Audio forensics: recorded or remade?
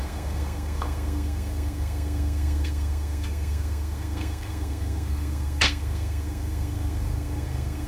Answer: remade